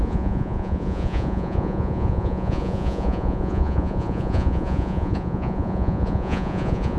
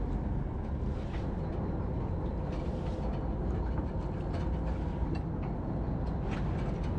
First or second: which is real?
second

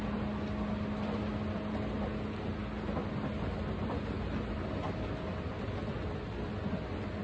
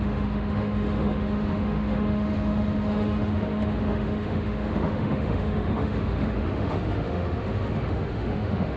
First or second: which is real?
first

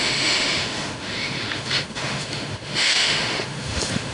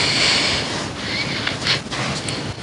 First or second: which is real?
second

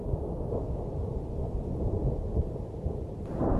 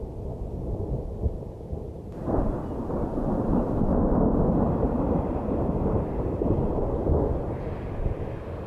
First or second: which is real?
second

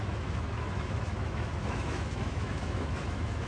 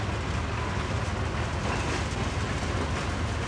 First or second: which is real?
second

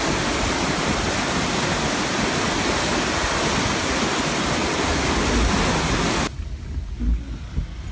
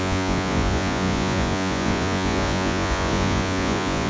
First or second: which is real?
first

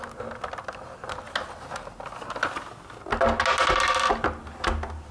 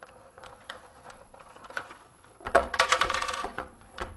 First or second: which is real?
first